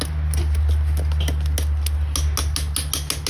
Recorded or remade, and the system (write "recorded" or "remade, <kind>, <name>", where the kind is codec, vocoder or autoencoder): recorded